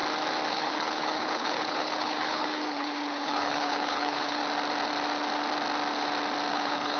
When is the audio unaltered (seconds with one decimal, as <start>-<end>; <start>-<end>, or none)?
0.0-0.5; 4.4-6.5